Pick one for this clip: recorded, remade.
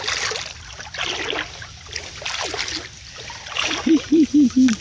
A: recorded